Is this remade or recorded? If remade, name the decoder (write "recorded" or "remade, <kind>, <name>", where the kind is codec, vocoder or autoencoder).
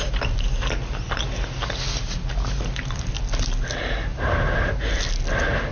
recorded